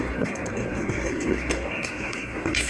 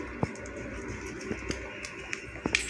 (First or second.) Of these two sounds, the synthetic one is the first